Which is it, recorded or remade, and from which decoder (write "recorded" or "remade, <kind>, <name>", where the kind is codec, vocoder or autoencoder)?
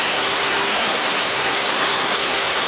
remade, codec, SNAC